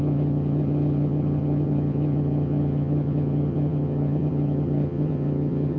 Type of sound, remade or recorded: remade